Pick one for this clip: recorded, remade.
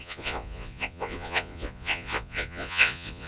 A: remade